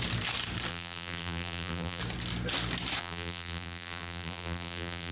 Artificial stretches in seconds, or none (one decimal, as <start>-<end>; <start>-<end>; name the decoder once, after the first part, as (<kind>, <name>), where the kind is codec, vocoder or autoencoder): 0.7-2.0 (vocoder, BigVGAN v2); 3.0-5.1